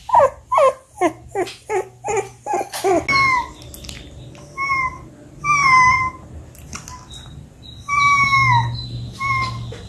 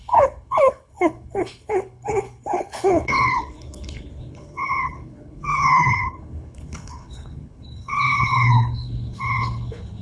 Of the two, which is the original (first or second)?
first